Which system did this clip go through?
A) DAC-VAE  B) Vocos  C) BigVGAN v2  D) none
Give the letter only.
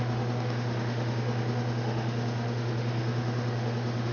A